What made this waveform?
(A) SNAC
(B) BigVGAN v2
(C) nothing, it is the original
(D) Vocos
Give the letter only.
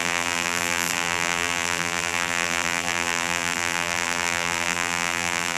B